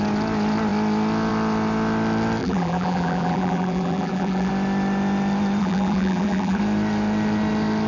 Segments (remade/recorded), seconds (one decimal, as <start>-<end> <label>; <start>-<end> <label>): 0.0-2.4 recorded; 2.4-4.5 remade; 4.5-5.6 recorded; 5.6-6.6 remade; 6.6-7.9 recorded